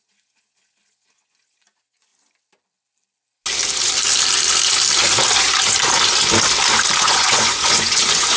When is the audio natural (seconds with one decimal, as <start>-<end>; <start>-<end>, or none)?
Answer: 2.1-7.0